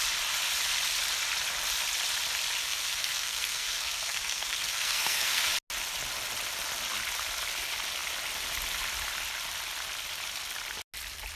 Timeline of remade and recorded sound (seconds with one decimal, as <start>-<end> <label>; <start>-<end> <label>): 0.0-2.6 recorded; 2.6-5.5 remade; 5.5-11.4 recorded